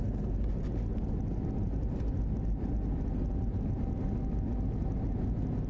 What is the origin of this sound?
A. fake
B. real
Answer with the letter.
B